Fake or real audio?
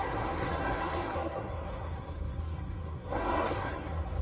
fake